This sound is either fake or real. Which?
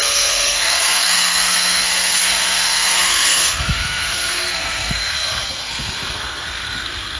fake